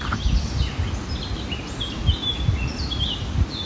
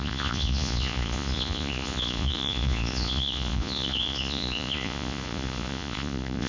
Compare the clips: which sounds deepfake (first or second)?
second